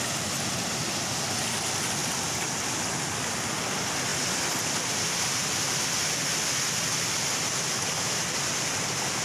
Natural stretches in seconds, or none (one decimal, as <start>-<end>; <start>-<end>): 0.0-9.2